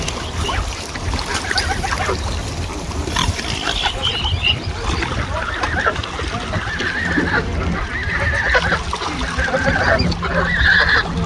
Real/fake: real